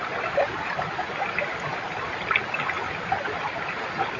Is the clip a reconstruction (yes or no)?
no